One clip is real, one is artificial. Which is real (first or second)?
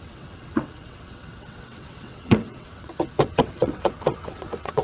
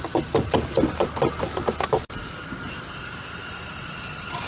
second